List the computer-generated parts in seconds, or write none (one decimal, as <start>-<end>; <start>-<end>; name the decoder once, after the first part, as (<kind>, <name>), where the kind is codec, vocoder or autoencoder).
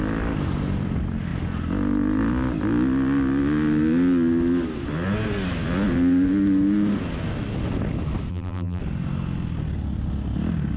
8.3-8.8 (vocoder, BigVGAN v2)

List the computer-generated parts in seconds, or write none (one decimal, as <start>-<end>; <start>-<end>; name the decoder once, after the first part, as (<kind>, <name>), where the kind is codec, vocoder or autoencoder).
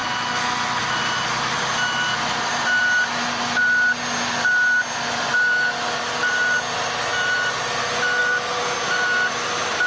none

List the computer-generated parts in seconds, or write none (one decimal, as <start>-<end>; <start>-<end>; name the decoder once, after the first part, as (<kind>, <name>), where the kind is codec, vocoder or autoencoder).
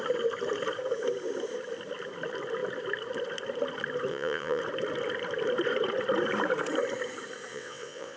4.1-4.6 (vocoder, WaveNeXt); 7.5-8.2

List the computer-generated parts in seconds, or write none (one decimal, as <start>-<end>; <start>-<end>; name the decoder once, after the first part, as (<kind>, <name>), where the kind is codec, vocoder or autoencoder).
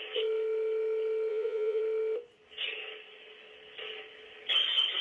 1.3-1.8 (vocoder, Vocos)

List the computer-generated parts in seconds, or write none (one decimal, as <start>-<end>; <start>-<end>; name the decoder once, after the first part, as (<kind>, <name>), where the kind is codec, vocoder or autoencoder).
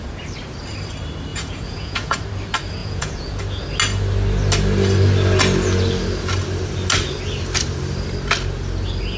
1.3-2.2 (vocoder, Vocos); 2.8-3.4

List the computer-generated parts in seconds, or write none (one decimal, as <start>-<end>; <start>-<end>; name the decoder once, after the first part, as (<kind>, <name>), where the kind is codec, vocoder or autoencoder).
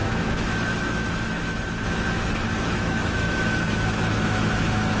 0.0-5.0 (autoencoder, DAC-VAE)